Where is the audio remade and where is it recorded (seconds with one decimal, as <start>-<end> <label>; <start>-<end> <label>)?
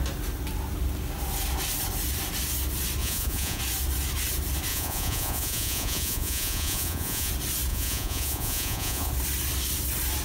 0.0-3.0 recorded; 3.0-3.6 remade; 3.6-4.7 recorded; 4.7-7.3 remade; 7.3-7.7 recorded; 7.7-9.1 remade; 9.1-10.2 recorded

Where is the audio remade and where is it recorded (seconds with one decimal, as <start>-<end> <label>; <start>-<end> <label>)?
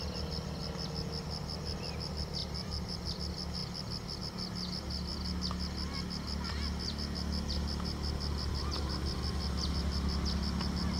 0.0-2.4 recorded; 2.4-3.2 remade; 3.2-11.0 recorded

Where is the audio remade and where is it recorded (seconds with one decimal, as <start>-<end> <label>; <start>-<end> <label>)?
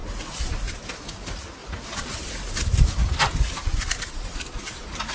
0.0-1.6 recorded; 1.6-3.0 remade; 3.0-3.6 recorded; 3.6-5.1 remade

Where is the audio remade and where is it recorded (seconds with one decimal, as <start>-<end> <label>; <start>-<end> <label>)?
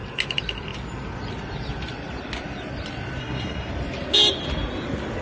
0.0-3.2 recorded; 3.2-3.7 remade; 3.7-5.2 recorded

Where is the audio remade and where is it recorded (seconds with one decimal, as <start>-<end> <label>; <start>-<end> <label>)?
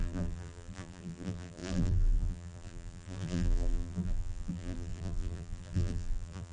0.0-6.5 remade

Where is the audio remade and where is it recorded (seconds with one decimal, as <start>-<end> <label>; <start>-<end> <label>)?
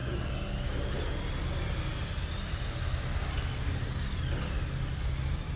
0.0-5.6 recorded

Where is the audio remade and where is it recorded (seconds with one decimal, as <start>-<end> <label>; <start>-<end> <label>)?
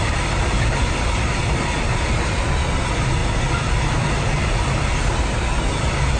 0.0-6.2 recorded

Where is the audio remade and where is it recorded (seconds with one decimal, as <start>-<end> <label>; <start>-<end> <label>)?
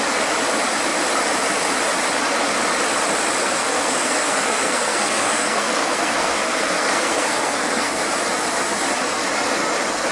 0.0-3.4 recorded; 3.4-8.0 remade; 8.0-10.1 recorded